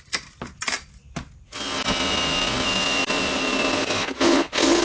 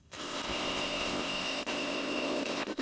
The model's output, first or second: second